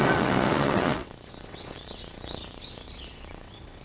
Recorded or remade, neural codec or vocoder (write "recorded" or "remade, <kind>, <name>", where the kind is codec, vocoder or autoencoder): remade, vocoder, WaveNeXt